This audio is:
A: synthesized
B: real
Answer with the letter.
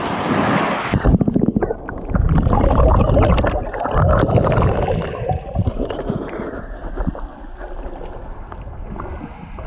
B